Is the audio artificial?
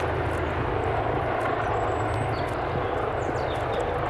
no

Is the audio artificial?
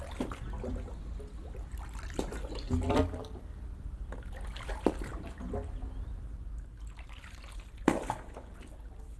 no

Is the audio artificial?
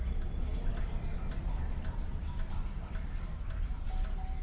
no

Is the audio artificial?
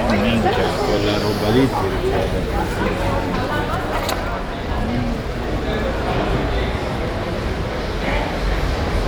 no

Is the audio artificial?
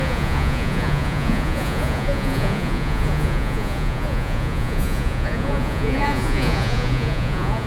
yes